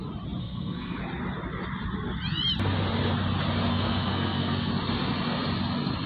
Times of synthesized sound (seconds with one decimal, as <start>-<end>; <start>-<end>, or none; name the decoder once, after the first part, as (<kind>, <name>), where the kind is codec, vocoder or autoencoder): 0.4-1.0 (codec, SNAC); 3.7-4.7